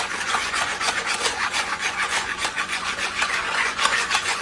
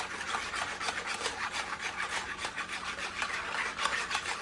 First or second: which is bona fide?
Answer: second